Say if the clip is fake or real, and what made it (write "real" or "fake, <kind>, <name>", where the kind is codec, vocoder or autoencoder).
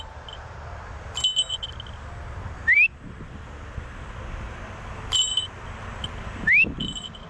real